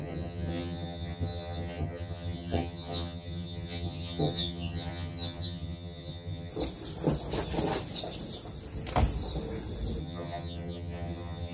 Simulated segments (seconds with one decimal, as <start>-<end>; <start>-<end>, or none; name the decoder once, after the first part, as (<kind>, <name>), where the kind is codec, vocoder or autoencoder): 0.0-6.5 (vocoder, HiFi-GAN); 10.0-11.5